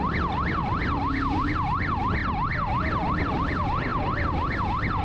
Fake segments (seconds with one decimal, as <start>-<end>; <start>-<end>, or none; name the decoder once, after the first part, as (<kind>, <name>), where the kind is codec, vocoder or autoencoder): 0.0-0.6 (vocoder, BigVGAN v2); 1.8-2.2; 3.3-5.0